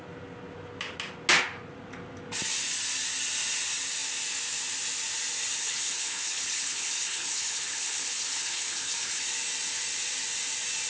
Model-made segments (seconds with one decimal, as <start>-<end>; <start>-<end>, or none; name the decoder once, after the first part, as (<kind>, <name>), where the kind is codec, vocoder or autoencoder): 5.6-9.2 (codec, HILCodec)